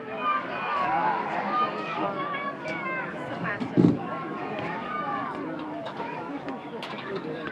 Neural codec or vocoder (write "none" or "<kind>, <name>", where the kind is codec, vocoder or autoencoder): codec, DAC